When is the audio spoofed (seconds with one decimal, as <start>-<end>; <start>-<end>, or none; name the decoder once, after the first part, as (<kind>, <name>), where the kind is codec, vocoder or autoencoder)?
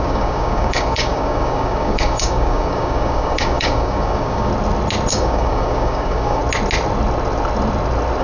0.0-4.5 (codec, DAC); 5.1-6.4